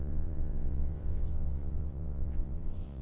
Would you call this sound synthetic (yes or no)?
yes